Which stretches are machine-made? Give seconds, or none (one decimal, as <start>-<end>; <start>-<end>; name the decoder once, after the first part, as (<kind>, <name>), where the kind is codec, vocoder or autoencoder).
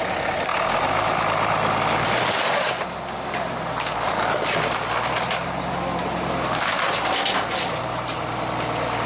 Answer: none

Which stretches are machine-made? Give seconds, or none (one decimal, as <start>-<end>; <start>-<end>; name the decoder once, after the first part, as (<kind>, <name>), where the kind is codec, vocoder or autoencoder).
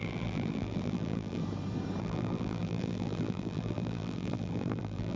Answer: 0.0-1.4 (vocoder, BigVGAN v2); 2.0-5.2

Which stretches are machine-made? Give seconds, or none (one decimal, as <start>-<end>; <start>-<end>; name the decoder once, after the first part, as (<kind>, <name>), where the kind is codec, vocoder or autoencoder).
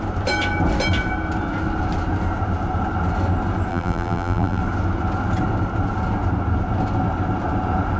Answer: 3.7-4.6 (vocoder, BigVGAN v2)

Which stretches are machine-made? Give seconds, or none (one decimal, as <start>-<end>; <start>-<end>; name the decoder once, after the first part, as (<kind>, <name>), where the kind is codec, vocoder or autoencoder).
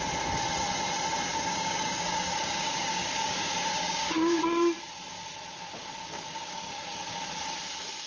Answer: 1.3-4.4 (codec, DAC); 6.1-7.2